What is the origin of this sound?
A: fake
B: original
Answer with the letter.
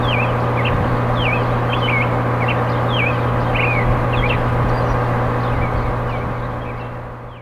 B